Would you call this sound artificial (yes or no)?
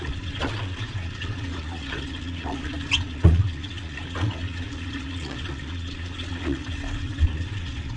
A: yes